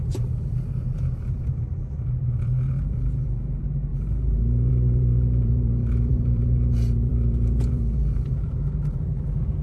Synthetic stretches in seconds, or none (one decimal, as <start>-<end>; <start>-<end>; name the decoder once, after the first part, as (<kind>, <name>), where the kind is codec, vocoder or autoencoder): 0.0-9.6 (vocoder, BigVGAN v2)